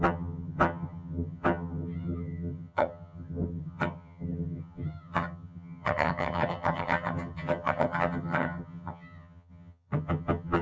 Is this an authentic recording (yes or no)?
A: no